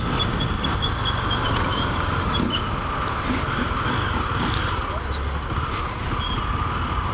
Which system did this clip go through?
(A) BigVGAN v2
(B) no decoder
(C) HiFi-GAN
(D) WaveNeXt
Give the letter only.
B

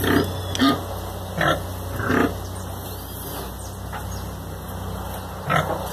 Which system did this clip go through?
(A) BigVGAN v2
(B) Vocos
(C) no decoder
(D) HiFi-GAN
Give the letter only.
C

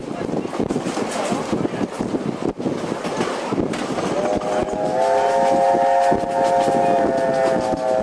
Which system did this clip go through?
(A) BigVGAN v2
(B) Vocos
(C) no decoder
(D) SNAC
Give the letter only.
C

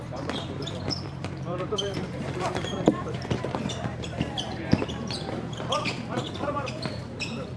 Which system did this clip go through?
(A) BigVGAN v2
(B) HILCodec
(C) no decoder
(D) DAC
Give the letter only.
A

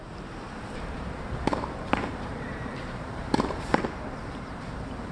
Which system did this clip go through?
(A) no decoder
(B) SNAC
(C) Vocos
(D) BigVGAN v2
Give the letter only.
D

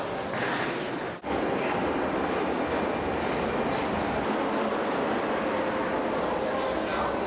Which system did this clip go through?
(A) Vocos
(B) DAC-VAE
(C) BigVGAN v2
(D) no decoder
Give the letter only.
D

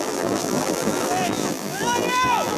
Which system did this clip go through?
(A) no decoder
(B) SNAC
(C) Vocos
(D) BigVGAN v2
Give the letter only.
D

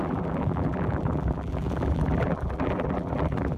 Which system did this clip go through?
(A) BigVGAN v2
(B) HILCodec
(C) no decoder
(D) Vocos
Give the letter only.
A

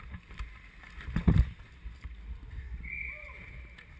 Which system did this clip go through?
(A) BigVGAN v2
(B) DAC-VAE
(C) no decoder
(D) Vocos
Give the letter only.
C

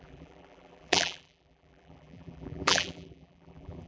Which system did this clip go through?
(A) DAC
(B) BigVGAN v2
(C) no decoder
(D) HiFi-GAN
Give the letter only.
B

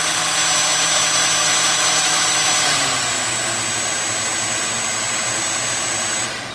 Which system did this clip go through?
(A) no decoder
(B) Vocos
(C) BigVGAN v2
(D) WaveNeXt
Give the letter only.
A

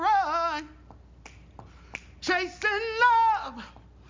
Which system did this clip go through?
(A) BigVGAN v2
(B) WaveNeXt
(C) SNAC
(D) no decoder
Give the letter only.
D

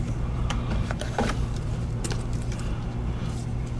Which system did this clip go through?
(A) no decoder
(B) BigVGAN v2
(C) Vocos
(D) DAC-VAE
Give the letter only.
B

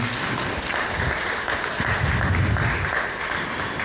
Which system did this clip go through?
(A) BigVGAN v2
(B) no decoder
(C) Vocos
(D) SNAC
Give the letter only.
B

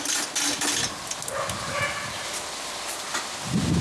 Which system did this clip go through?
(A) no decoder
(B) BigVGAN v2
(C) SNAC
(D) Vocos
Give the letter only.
A